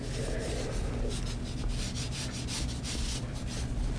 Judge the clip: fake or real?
real